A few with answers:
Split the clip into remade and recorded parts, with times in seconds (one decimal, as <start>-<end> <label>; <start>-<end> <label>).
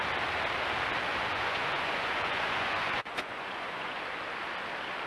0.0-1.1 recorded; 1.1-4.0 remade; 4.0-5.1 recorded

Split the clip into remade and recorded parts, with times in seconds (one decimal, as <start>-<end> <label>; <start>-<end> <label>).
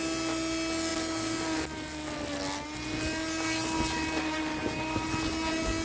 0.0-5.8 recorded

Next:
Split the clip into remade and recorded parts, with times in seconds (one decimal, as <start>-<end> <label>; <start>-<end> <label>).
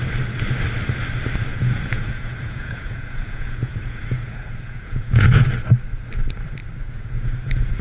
0.0-1.5 recorded; 1.5-5.5 remade; 5.5-6.8 recorded; 6.8-7.8 remade